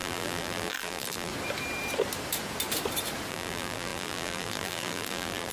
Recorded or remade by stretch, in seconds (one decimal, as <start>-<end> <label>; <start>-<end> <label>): 0.0-1.3 remade; 1.3-3.3 recorded; 3.3-5.5 remade